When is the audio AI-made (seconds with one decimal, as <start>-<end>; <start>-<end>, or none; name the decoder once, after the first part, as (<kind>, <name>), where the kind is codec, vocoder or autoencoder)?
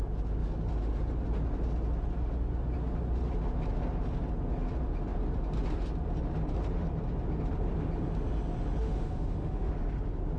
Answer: 8.8-9.7 (autoencoder, DAC-VAE)